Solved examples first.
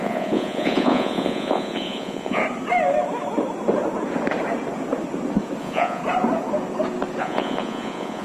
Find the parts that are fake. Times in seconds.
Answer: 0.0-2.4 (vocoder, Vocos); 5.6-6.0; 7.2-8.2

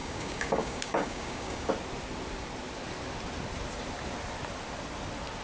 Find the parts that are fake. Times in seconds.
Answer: 0.0-1.7 (codec, DAC)